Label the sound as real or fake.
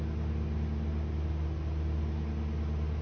real